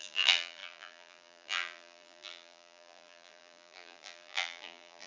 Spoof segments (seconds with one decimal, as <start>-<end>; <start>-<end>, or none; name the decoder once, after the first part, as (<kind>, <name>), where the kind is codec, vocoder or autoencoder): 0.0-5.1 (vocoder, BigVGAN v2)